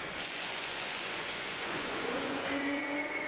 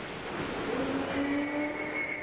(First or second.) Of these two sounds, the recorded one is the second